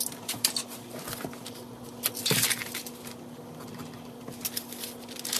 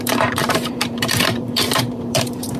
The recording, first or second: first